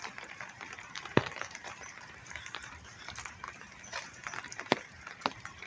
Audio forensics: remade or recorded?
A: remade